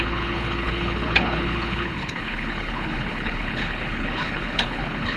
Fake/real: fake